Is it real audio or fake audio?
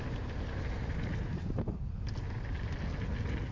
real